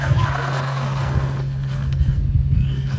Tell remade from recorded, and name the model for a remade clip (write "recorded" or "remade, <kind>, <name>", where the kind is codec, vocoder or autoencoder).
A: remade, codec, SNAC